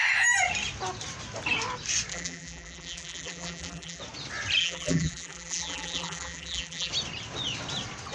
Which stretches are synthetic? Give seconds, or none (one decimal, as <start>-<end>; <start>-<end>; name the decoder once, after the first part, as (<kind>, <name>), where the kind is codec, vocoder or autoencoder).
2.1-4.0 (vocoder, BigVGAN v2); 4.6-6.9